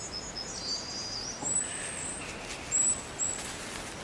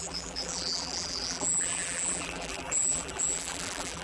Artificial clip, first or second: second